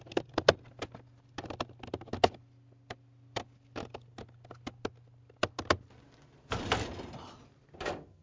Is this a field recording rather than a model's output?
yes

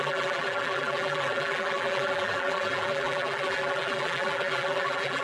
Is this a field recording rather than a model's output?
no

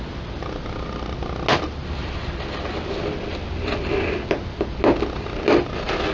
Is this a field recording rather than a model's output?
yes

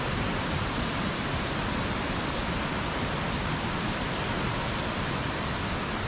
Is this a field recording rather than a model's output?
yes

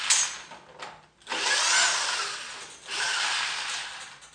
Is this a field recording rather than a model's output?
yes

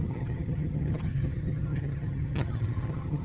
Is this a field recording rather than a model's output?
no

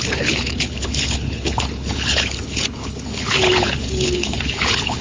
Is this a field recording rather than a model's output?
no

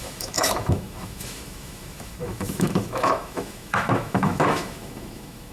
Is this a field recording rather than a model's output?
no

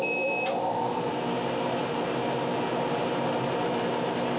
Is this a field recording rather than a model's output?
yes